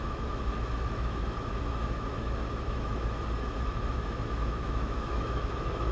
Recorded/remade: remade